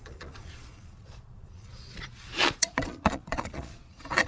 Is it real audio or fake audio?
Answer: fake